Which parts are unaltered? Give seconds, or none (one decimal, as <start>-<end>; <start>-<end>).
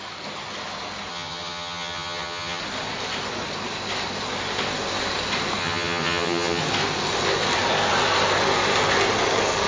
0.0-1.1; 2.6-5.6; 6.6-9.7